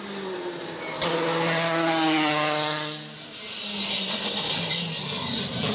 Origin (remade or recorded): recorded